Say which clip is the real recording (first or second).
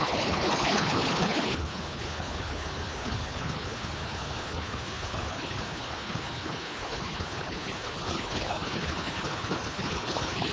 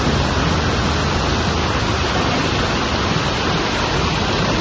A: second